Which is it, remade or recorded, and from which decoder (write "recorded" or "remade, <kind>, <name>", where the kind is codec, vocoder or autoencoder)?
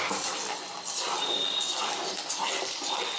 recorded